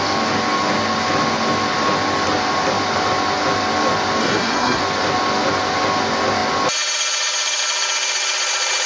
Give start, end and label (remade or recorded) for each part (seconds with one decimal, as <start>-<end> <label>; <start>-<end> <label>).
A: 0.0-4.2 recorded; 4.2-4.8 remade; 4.8-8.9 recorded